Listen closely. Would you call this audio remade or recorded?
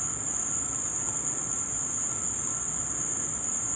recorded